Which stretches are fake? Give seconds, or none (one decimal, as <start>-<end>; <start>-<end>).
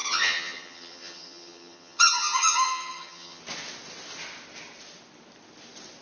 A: 0.0-3.4